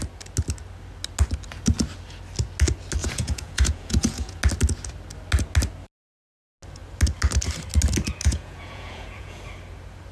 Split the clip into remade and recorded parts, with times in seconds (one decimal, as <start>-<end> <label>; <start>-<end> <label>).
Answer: 0.0-3.0 recorded; 3.0-4.4 remade; 4.4-8.2 recorded; 8.2-9.4 remade; 9.4-10.1 recorded